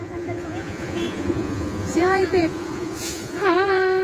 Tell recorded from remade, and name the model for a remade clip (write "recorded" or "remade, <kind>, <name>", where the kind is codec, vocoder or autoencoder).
remade, vocoder, Vocos